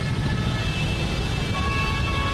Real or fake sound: real